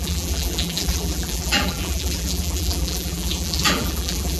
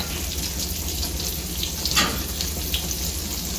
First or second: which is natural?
second